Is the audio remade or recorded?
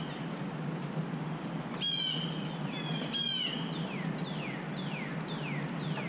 recorded